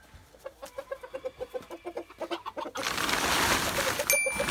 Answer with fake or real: real